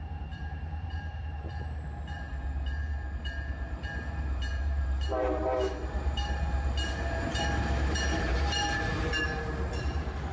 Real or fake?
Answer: fake